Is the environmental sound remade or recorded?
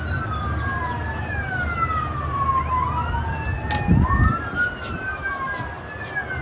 recorded